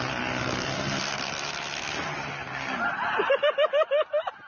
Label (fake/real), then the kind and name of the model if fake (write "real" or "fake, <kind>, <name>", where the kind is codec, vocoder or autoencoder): real